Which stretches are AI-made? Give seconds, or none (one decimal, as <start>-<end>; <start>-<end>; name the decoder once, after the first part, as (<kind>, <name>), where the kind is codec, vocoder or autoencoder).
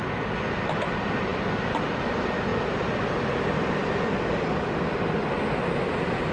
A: none